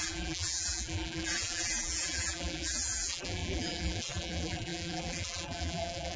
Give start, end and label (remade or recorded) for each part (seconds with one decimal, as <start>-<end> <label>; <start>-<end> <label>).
0.0-6.2 remade